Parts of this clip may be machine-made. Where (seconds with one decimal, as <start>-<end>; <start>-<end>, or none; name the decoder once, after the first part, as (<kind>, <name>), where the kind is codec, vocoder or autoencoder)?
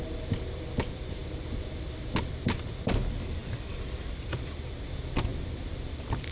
3.4-4.3 (vocoder, BigVGAN v2); 5.3-6.3